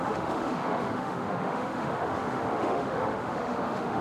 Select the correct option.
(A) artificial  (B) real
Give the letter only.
A